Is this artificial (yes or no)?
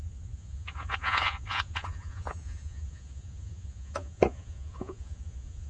yes